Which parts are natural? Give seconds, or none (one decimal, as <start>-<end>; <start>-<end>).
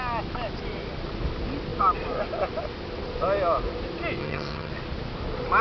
0.0-4.2; 4.7-5.6